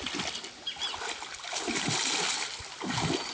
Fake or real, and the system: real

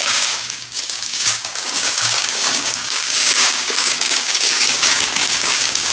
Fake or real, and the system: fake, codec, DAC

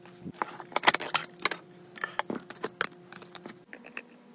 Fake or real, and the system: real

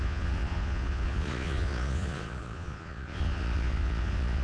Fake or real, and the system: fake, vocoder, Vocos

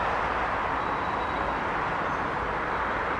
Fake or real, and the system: real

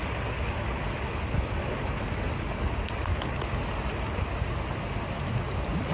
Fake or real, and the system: real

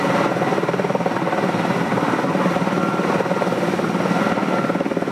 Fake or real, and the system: real